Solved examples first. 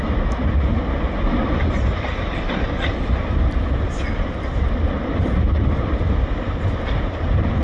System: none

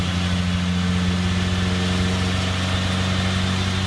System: none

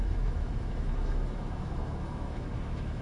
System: autoencoder, DAC-VAE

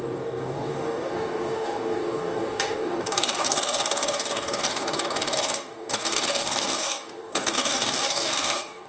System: codec, DAC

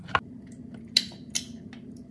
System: none